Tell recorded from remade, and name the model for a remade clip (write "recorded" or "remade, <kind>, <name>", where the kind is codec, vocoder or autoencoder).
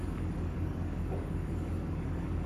remade, codec, DAC